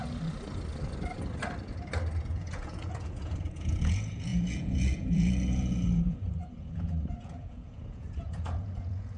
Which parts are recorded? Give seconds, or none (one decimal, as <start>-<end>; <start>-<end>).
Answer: 0.0-2.2